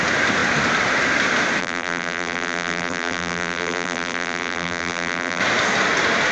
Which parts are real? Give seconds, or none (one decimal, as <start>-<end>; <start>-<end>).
0.0-1.6; 5.4-6.3